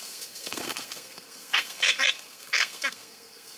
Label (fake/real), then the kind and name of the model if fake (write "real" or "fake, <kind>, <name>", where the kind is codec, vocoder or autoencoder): fake, codec, SNAC